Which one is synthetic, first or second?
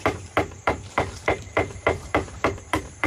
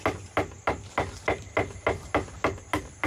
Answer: first